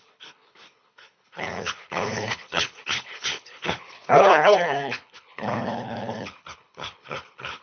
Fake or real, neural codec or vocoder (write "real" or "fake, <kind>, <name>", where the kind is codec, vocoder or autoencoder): fake, codec, HILCodec